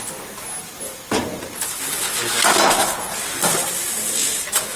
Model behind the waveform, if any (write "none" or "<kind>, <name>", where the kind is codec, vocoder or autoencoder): none